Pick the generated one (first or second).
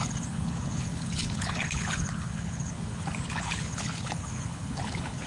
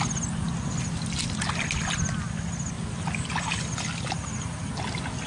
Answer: first